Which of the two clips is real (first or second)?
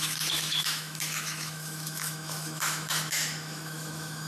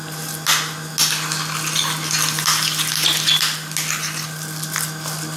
second